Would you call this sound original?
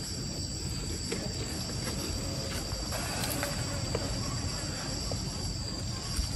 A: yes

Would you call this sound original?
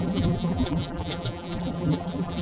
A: no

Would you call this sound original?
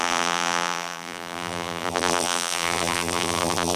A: no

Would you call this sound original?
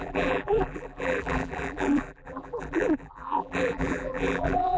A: no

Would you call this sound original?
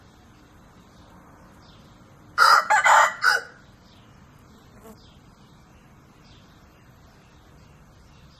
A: yes